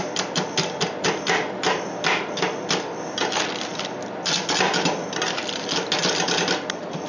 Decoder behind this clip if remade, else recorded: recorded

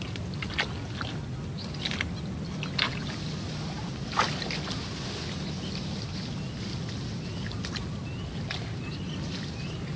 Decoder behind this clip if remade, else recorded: recorded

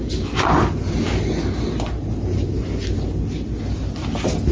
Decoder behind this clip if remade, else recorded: recorded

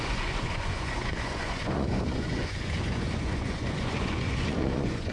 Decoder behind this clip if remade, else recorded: remade, vocoder, Vocos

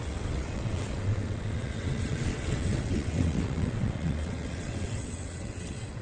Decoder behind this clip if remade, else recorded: remade, vocoder, WaveNeXt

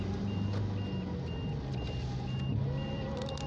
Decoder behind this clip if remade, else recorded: recorded